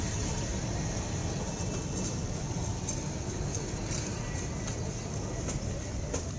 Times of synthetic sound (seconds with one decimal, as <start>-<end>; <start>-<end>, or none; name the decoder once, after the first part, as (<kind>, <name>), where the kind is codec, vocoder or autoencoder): none